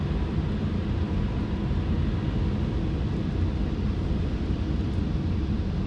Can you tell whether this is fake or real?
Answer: real